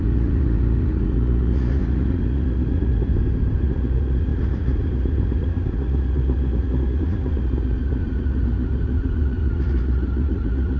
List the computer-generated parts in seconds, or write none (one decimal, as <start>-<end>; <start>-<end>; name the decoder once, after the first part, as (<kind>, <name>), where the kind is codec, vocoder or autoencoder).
0.0-3.1 (vocoder, Vocos); 3.6-10.8